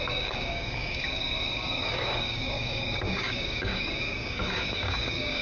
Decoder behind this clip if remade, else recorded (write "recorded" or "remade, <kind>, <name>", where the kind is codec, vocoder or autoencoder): remade, codec, DAC